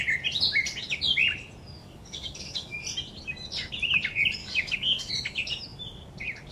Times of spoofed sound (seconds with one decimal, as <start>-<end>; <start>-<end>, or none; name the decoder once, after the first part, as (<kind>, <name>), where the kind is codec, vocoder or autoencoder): 1.8-2.8 (codec, DAC); 4.4-5.1